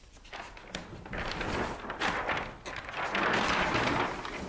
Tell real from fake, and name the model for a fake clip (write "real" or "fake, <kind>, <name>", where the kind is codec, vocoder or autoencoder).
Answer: real